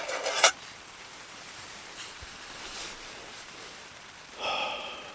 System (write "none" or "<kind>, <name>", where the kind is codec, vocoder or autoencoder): vocoder, BigVGAN v2